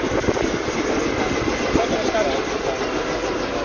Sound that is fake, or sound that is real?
real